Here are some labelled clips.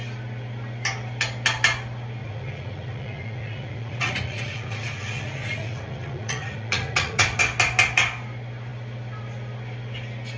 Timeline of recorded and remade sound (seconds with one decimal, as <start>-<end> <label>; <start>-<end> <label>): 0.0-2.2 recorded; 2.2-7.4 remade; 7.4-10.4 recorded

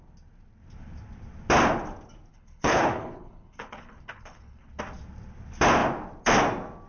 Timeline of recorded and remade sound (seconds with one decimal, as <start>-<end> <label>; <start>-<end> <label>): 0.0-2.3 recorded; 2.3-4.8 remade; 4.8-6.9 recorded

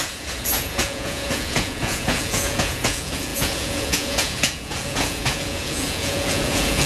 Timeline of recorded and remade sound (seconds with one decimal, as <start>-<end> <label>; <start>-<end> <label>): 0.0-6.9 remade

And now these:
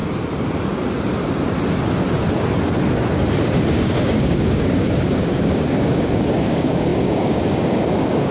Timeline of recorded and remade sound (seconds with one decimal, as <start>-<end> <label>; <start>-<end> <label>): 0.0-3.7 recorded; 3.7-8.3 remade